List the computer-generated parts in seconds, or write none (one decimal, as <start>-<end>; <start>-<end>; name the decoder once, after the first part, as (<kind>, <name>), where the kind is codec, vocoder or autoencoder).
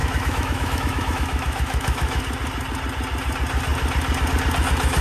0.0-2.2 (autoencoder, DAC-VAE)